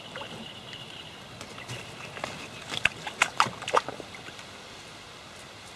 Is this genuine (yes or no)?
yes